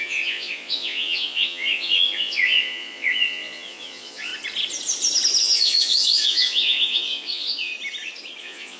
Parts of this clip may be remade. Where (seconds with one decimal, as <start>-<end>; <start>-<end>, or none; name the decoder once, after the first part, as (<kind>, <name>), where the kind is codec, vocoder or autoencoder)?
0.0-4.3 (vocoder, Vocos); 5.4-7.7; 8.4-8.8